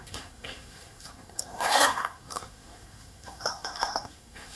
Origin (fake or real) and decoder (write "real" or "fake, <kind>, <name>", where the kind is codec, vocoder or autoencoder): fake, codec, SNAC